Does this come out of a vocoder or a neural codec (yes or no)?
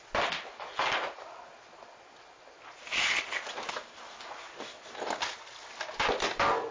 no